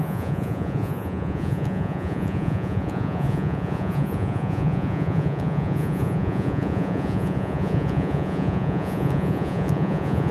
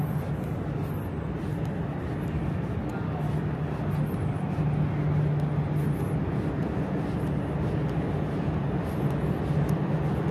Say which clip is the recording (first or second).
second